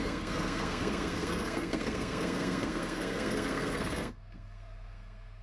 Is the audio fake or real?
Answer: fake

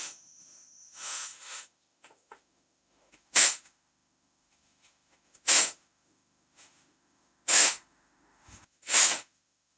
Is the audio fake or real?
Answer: fake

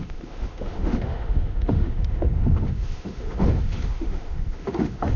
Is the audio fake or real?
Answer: fake